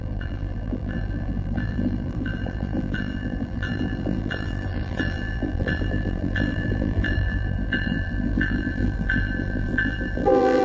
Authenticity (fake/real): fake